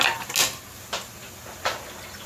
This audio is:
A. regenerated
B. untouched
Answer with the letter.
B